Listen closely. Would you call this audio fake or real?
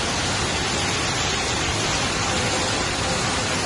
real